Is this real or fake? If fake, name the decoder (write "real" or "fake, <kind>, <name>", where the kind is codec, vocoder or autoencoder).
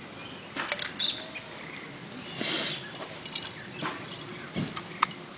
real